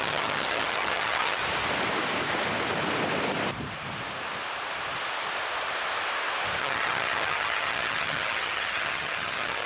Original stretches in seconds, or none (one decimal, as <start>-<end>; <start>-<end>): 1.4-6.6

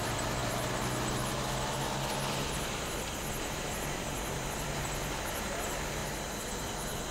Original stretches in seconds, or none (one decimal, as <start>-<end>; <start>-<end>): 0.4-2.1; 6.0-6.5

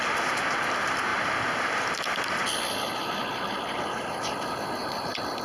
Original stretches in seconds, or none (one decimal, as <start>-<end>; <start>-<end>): 0.0-5.4

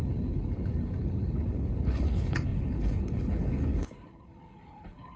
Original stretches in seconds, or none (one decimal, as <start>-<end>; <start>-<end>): none